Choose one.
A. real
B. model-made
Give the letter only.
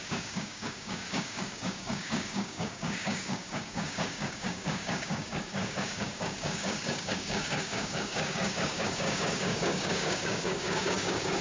B